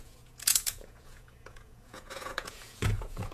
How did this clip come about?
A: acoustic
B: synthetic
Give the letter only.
B